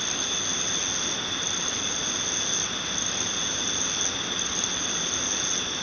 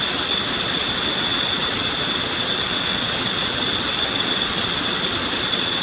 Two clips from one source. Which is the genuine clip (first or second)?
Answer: first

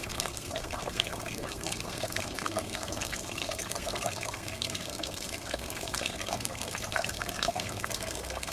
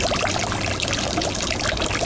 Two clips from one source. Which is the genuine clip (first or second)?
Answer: second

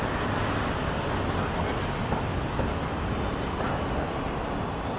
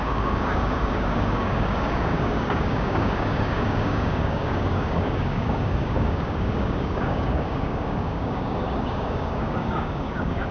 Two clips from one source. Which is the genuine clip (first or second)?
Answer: first